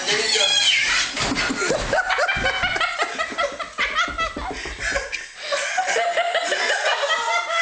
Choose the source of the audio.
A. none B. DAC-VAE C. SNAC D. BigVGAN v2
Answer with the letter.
A